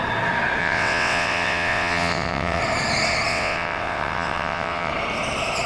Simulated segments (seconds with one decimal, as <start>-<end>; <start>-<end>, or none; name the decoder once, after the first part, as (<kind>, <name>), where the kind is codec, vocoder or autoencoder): 0.6-2.6 (vocoder, WaveNeXt); 3.3-4.9